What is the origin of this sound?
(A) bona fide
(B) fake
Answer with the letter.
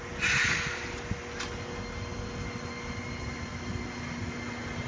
A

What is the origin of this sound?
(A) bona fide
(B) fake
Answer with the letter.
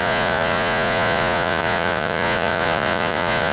B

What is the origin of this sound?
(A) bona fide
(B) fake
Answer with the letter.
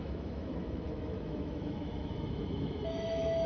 B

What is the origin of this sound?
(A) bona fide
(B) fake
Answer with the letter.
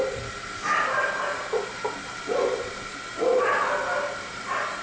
A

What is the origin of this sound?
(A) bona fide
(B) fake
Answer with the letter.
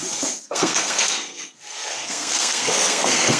B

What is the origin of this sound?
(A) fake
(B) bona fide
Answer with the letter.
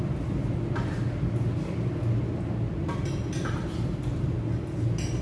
B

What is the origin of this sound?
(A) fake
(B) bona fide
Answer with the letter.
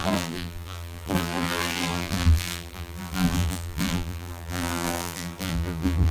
A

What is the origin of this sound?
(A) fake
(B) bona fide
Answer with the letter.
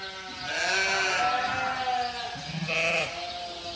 B